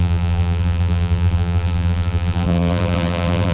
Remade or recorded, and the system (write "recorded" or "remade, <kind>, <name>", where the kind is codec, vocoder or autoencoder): remade, vocoder, BigVGAN v2